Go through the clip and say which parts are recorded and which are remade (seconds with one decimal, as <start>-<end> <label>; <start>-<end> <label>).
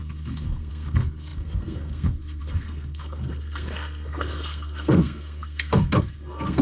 0.0-6.6 remade